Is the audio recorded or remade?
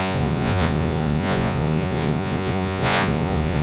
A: remade